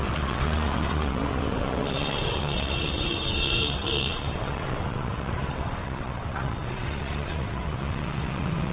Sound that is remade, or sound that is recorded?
remade